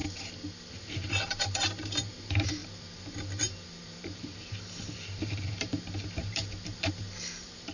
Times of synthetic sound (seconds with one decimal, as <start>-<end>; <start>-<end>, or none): 0.7-7.7